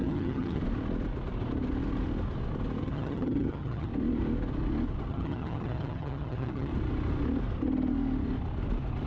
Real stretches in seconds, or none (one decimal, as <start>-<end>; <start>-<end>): 0.6-2.8; 3.9-5.1; 6.7-9.1

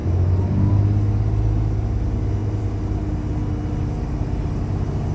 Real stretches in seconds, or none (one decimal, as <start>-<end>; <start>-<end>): 0.0-5.1

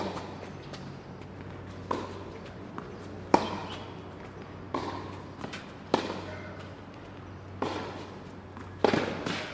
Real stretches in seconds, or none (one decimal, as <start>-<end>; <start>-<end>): 0.0-9.5

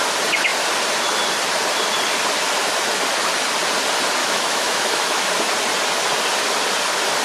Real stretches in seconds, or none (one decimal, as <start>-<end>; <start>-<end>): 0.0-4.2; 5.3-7.2

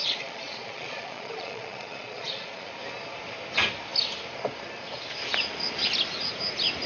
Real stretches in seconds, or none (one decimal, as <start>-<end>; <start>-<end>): 2.7-6.9

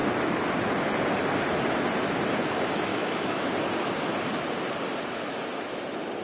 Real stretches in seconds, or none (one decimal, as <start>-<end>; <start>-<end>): 0.0-2.9; 3.5-6.2

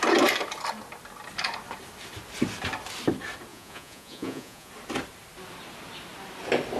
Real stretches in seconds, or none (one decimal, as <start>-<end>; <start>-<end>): 0.0-3.5; 4.7-6.8

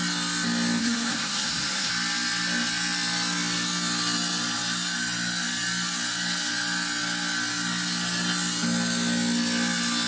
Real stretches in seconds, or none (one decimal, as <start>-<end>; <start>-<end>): 0.0-0.8; 1.9-10.1